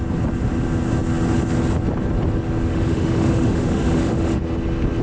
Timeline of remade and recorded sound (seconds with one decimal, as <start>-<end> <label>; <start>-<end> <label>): 0.0-2.7 recorded; 2.7-4.4 remade; 4.4-5.0 recorded